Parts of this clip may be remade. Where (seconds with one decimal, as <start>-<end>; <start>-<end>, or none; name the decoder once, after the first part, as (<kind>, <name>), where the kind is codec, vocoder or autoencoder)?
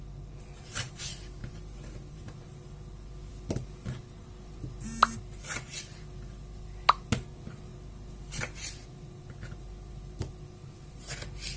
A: none